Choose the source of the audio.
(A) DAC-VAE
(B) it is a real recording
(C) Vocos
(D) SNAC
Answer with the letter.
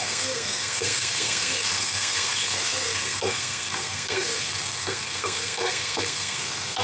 D